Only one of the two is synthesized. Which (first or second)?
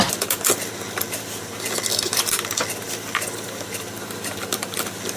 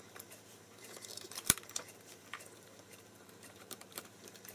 second